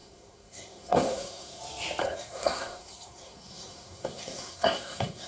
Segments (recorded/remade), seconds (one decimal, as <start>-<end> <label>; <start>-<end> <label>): 0.0-1.6 remade; 1.6-2.0 recorded; 2.0-5.3 remade

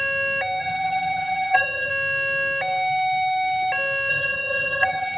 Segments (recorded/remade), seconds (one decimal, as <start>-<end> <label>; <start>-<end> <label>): 0.0-0.6 recorded; 0.6-1.9 remade; 1.9-4.1 recorded; 4.1-5.2 remade

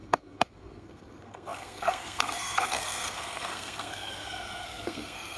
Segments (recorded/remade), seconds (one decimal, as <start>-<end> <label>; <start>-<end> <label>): 0.0-5.4 remade

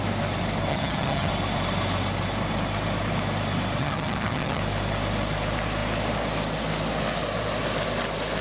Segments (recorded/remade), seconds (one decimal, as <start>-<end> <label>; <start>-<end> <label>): 0.0-0.7 recorded; 0.7-1.3 remade; 1.3-3.8 recorded; 3.8-4.6 remade; 4.6-8.4 recorded

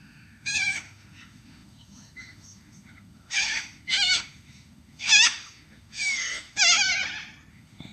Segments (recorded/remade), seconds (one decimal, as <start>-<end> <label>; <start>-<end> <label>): 0.0-6.9 remade; 6.9-7.5 recorded; 7.5-7.9 remade

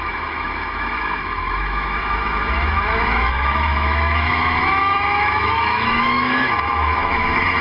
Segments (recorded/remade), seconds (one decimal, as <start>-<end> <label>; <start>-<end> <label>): 0.0-7.6 remade

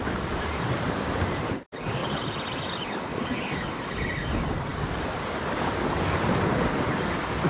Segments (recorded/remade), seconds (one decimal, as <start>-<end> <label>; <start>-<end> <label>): 0.0-7.5 recorded